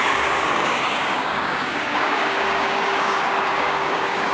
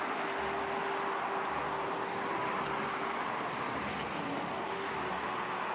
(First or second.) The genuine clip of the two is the second